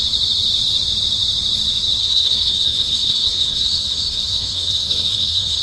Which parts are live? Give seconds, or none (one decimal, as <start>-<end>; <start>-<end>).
0.0-2.0